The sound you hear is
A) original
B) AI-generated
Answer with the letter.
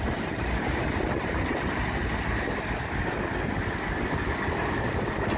A